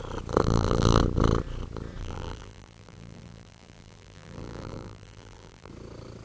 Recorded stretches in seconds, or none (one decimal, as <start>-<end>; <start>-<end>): 0.0-0.4; 1.0-2.0; 5.7-6.2